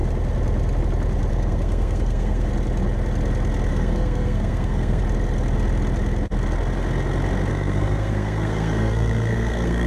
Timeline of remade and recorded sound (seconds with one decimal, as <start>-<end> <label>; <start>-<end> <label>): 0.0-1.3 recorded; 1.3-2.5 remade; 2.5-3.7 recorded; 3.7-5.0 remade; 5.0-7.5 recorded; 7.5-9.9 remade